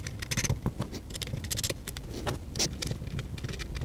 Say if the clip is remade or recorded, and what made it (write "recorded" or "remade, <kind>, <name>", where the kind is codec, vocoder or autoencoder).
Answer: recorded